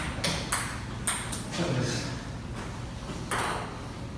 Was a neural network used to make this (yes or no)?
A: no